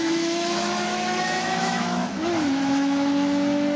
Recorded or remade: remade